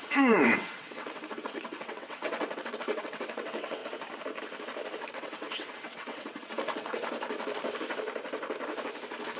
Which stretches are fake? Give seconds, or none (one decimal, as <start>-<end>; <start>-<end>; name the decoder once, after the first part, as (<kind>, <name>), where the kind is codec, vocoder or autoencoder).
0.0-3.8 (vocoder, WaveNeXt); 5.1-7.0